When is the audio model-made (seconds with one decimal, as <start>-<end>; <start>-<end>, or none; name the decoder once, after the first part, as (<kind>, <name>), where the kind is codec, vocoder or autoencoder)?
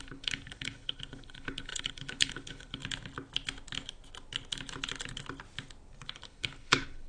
0.0-2.8 (codec, HILCodec); 6.1-7.1